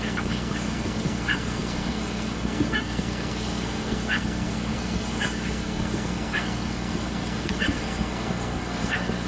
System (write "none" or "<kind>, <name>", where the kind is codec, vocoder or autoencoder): codec, SNAC